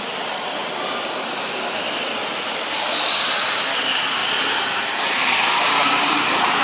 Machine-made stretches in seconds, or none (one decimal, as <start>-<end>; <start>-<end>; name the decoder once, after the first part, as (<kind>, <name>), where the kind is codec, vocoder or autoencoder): none